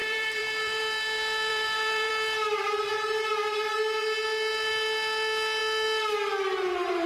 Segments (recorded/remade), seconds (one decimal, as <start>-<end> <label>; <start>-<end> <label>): 0.0-0.8 remade; 0.8-1.5 recorded; 1.5-2.1 remade; 2.1-7.1 recorded